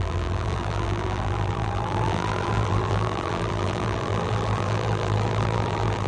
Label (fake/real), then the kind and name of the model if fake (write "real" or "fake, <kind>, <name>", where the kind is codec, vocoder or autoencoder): fake, vocoder, BigVGAN v2